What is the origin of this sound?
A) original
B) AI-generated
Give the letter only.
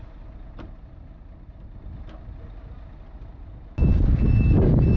A